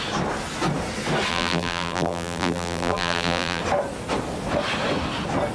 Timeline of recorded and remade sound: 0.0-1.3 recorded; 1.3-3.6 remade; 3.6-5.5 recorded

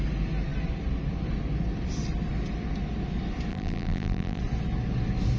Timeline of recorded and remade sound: 0.0-3.5 recorded; 3.5-4.4 remade; 4.4-5.4 recorded

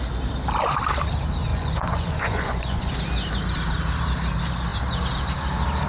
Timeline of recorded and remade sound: 0.0-1.5 recorded; 1.5-2.9 remade; 2.9-5.9 recorded